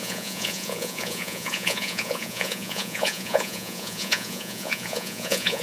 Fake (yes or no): yes